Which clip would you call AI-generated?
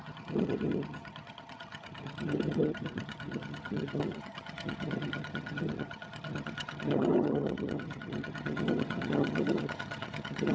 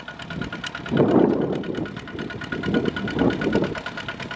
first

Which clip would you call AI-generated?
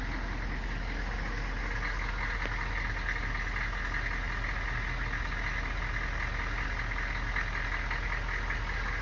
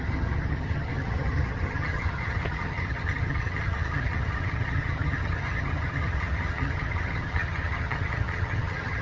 second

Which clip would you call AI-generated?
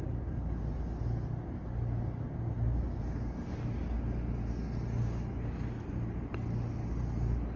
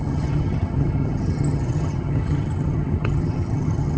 second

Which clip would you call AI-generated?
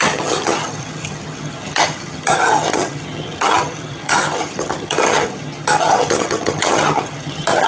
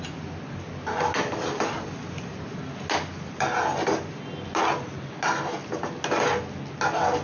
first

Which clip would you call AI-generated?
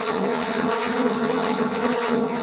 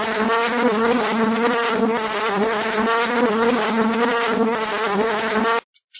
first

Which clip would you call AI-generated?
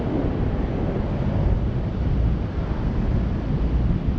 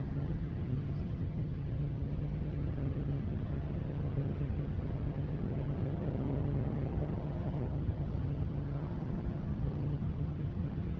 second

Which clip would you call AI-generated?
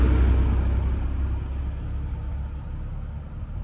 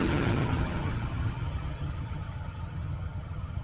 second